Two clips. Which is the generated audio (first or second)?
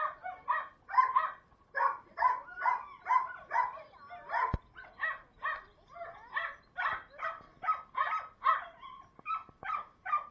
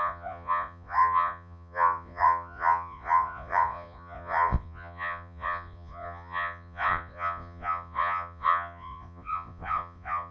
second